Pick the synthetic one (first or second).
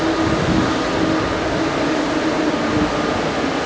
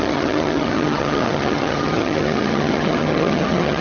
second